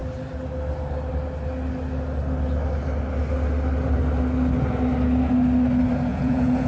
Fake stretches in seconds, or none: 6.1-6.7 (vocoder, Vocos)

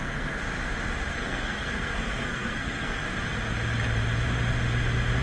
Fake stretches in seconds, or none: 0.0-0.4 (codec, SNAC); 1.1-3.0

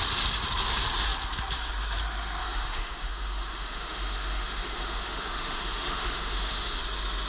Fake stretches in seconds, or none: 2.4-6.8 (autoencoder, DAC-VAE)

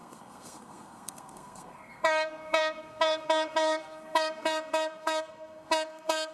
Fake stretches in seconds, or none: 0.0-6.3 (codec, SNAC)

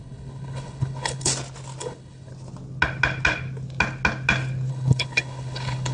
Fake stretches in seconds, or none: 0.0-1.3 (codec, HILCodec); 1.8-2.3; 4.7-5.9

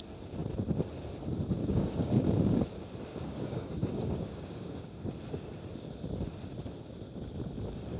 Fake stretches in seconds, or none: 1.6-2.3 (codec, DAC); 3.1-5.1